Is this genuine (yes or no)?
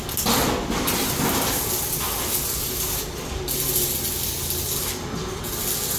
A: yes